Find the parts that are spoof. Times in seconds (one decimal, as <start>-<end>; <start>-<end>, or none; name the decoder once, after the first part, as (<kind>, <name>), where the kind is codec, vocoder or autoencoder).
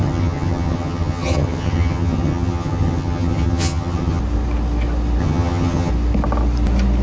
0.0-4.2 (vocoder, HiFi-GAN); 5.2-5.9